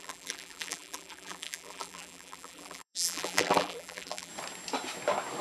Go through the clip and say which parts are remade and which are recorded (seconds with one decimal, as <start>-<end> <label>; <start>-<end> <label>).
0.0-4.3 remade; 4.3-5.4 recorded